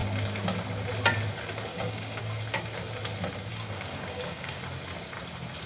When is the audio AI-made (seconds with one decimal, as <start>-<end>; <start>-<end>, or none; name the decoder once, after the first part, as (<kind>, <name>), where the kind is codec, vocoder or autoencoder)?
1.7-2.2 (codec, DAC); 3.5-4.6